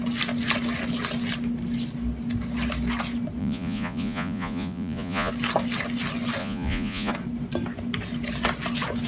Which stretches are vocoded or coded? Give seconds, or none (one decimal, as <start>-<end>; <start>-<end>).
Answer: 3.4-5.3; 6.4-7.1